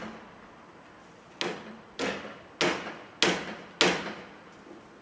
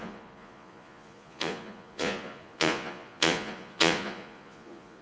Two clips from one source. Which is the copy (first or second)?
second